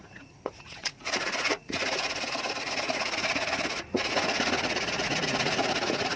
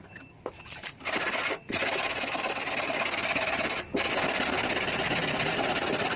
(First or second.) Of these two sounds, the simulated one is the first